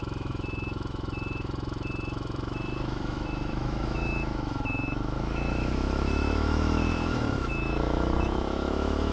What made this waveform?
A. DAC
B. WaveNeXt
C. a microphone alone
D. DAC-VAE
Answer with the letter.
D